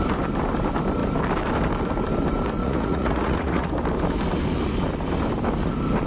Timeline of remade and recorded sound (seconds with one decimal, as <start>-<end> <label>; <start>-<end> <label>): 0.0-2.6 recorded; 2.6-3.7 remade; 3.7-6.1 recorded

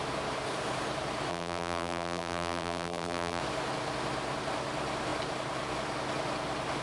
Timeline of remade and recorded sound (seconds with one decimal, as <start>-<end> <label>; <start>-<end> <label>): 0.0-1.3 recorded; 1.3-3.4 remade; 3.4-6.8 recorded

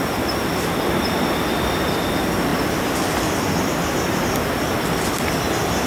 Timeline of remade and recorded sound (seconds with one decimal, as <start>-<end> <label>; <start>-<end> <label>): 0.0-5.9 recorded

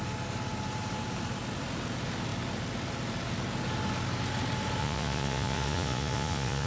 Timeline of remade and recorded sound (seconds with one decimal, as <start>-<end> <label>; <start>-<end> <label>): 0.0-4.8 recorded; 4.8-6.7 remade

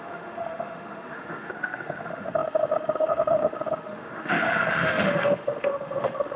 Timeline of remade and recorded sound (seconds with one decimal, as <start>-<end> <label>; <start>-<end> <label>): 0.0-6.4 remade